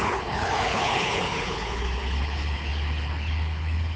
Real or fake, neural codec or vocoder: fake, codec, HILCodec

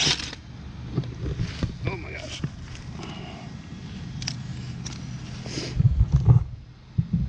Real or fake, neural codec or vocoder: real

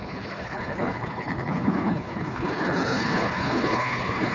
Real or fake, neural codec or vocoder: fake, codec, HILCodec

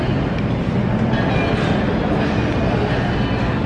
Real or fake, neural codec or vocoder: real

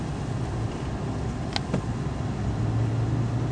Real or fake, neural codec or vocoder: real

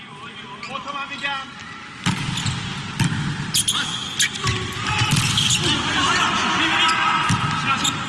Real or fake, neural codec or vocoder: real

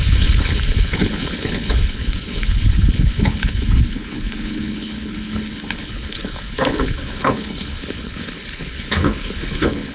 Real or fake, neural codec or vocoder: fake, codec, HILCodec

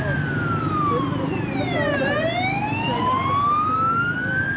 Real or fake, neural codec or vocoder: real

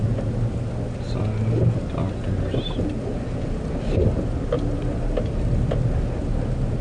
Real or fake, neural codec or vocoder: real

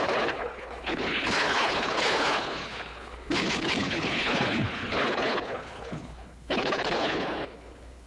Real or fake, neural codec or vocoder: fake, codec, HILCodec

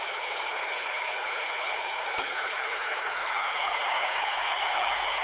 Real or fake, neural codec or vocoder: fake, codec, HILCodec